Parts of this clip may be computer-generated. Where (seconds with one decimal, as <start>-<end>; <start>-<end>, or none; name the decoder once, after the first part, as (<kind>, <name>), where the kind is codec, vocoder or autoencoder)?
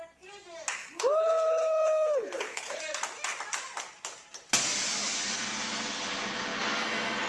0.8-2.8 (codec, HILCodec)